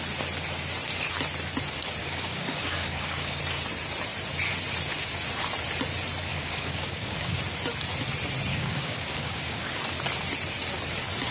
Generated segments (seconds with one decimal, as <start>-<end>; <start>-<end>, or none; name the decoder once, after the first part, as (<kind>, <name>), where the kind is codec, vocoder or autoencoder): 2.0-3.4 (codec, DAC); 6.3-7.4; 8.5-9.8